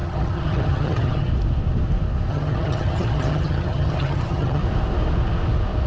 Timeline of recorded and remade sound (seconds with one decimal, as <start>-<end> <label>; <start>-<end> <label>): 0.0-1.3 remade; 1.3-2.3 recorded; 2.3-4.6 remade; 4.6-5.9 recorded